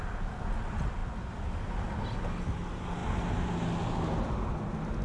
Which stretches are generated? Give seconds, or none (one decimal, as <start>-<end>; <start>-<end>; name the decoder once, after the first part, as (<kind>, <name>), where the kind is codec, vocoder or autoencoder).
none